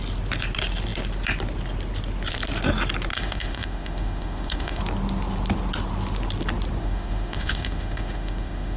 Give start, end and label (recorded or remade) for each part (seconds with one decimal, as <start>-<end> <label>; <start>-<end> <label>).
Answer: 0.0-3.1 recorded; 3.1-4.8 remade; 4.8-6.8 recorded; 6.8-8.8 remade